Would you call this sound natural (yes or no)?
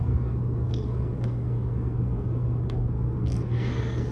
no